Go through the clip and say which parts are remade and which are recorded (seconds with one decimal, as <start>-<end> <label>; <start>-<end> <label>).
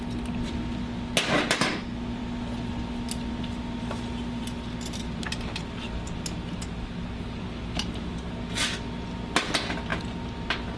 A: 0.0-10.8 recorded